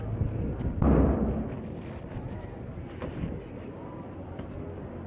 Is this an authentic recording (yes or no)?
yes